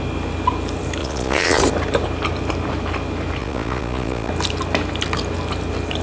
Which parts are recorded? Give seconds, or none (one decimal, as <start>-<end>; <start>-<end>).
0.0-1.0; 1.6-3.4; 4.3-6.0